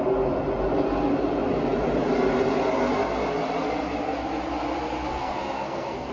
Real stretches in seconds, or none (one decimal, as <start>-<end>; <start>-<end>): 0.0-5.1